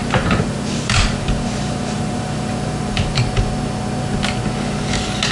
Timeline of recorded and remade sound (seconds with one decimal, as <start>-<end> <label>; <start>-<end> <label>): 0.0-3.2 remade; 3.2-5.3 recorded